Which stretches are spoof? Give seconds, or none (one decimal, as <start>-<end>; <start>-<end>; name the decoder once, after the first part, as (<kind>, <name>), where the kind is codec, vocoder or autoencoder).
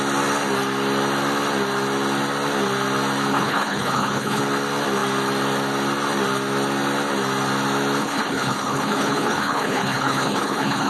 3.3-4.4 (codec, HILCodec); 8.0-10.9